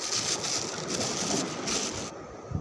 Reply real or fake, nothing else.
real